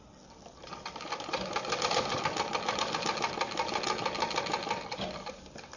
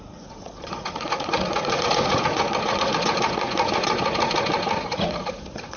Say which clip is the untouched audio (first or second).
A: first